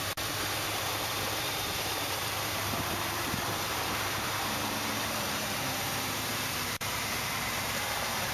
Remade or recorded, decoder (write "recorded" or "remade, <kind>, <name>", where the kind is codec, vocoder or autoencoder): remade, vocoder, BigVGAN v2